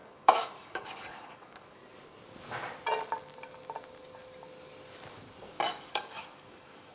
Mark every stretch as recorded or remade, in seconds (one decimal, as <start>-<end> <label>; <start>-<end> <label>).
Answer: 0.0-1.8 remade; 1.8-5.9 recorded; 5.9-6.9 remade